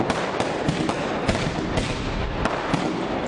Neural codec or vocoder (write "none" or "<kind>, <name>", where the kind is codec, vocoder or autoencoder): none